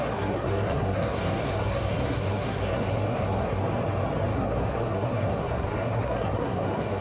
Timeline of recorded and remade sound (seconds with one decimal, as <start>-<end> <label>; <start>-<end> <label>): 0.0-3.6 remade; 3.6-4.3 recorded; 4.3-7.0 remade